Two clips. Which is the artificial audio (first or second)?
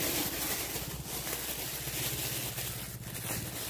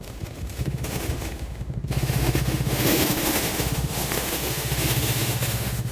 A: second